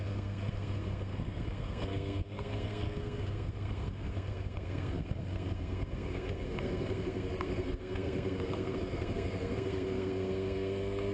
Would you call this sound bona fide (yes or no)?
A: no